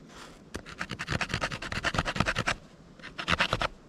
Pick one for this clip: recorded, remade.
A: recorded